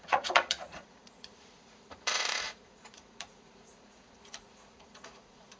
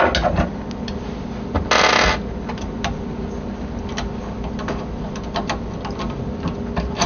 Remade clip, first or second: first